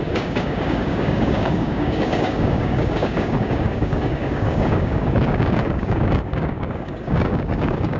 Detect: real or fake fake